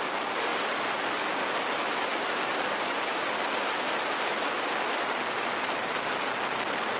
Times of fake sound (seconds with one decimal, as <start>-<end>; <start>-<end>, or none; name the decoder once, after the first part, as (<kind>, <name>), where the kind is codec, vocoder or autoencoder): none